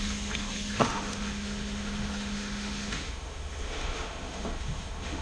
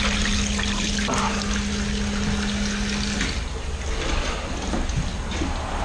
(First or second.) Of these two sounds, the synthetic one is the first